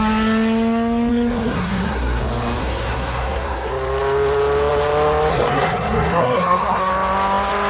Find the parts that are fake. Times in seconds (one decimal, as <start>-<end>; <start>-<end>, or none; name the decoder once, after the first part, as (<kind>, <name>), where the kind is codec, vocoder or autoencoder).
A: 1.1-2.2 (codec, SNAC); 2.6-3.7; 5.3-6.9